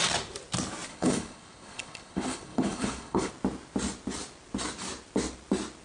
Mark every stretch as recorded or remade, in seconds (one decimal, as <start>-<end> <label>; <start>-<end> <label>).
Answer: 0.0-0.9 recorded; 0.9-3.3 remade; 3.3-5.8 recorded

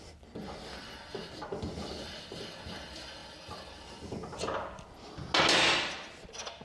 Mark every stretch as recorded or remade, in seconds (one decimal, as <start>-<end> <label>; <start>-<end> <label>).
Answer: 0.0-6.6 recorded

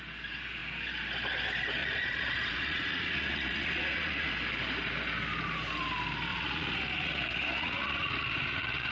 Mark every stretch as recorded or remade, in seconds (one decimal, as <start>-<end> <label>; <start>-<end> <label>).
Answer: 0.0-1.8 recorded; 1.8-4.3 remade; 4.3-6.3 recorded; 6.3-8.9 remade

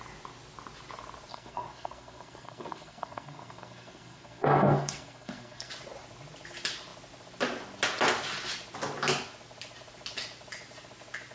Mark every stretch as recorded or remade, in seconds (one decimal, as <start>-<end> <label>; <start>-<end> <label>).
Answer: 0.0-1.3 recorded; 1.3-5.7 remade; 5.7-11.3 recorded

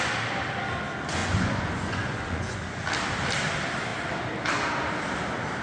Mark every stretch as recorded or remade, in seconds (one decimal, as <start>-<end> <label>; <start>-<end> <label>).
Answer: 0.0-1.2 recorded; 1.2-2.8 remade; 2.8-5.6 recorded

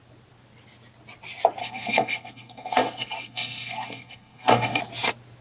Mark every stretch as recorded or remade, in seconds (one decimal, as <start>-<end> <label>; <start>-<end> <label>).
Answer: 0.0-1.6 recorded; 1.6-4.8 remade; 4.8-5.4 recorded